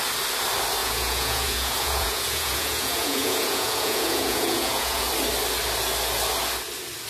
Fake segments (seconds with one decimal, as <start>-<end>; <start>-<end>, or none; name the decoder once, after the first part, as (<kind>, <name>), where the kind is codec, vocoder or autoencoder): 0.8-5.1 (vocoder, Vocos)